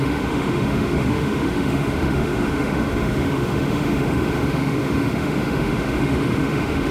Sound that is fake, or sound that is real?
fake